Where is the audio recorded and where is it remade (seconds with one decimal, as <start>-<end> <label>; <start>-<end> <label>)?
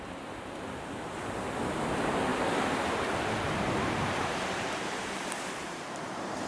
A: 0.0-2.3 recorded; 2.3-6.5 remade